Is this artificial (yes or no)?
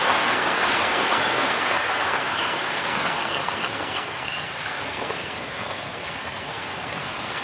yes